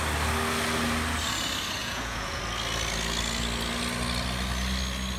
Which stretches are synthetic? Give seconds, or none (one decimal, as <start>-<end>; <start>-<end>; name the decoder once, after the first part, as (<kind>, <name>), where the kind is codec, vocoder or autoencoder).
1.8-2.4 (vocoder, Vocos)